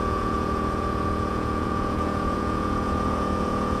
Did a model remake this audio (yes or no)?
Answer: yes